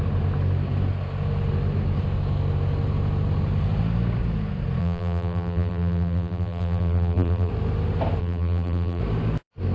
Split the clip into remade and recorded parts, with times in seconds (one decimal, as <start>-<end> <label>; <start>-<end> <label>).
0.0-4.8 recorded; 4.8-7.5 remade; 7.5-8.2 recorded; 8.2-9.0 remade; 9.0-9.7 recorded